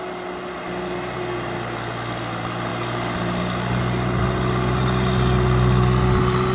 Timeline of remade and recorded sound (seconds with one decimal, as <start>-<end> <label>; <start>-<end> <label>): 0.0-6.5 recorded